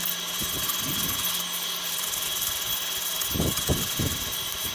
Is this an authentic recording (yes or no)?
yes